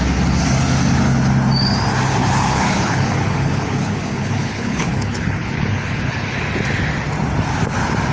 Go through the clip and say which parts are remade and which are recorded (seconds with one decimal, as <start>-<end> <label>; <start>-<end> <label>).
0.0-2.2 recorded; 2.2-6.4 remade; 6.4-8.1 recorded